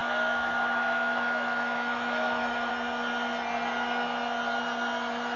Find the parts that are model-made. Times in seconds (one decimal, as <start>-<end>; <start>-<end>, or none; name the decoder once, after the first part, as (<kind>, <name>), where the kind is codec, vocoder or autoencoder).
0.0-2.7 (autoencoder, DAC-VAE)